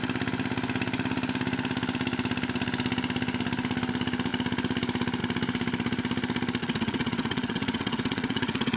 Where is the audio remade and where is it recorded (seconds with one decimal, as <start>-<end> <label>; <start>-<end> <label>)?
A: 0.0-6.6 recorded; 6.6-8.8 remade